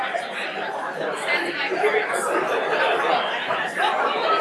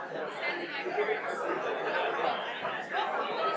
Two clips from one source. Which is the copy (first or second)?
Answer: first